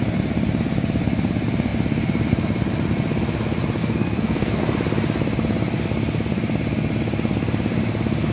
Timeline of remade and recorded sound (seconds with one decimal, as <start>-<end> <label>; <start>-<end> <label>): 0.0-3.8 recorded; 3.8-4.6 remade; 4.6-8.3 recorded